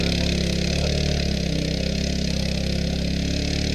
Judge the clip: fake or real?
real